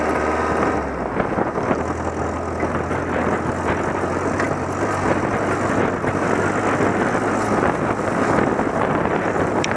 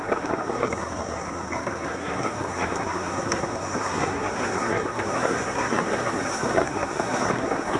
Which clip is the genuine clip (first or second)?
first